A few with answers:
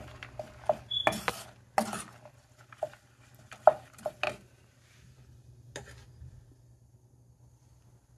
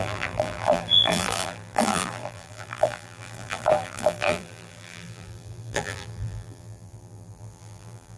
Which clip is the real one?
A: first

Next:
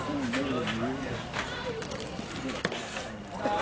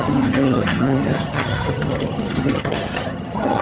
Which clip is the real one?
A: first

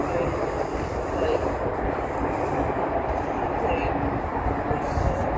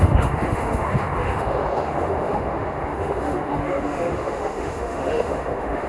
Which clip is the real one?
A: first